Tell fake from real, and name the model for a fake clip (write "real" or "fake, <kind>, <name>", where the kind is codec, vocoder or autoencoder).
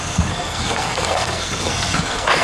fake, codec, SNAC